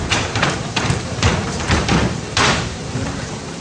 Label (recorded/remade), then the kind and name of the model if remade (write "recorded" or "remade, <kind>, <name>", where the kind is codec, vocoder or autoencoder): remade, vocoder, BigVGAN v2